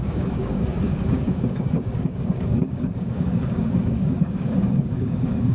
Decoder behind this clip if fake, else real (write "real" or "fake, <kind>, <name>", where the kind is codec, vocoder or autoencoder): fake, codec, DAC